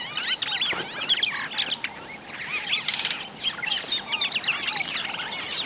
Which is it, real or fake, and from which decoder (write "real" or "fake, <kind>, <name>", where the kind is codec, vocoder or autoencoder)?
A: real